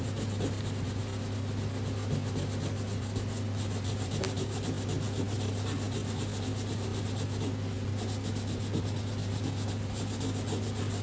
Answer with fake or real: real